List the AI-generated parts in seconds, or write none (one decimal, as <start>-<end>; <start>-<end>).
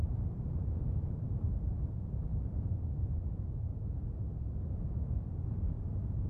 0.0-2.3; 3.1-3.7; 5.5-6.3